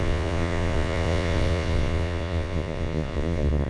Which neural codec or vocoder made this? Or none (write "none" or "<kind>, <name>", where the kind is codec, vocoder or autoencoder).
vocoder, Vocos